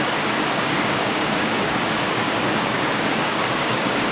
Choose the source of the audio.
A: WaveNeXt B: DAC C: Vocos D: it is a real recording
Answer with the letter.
B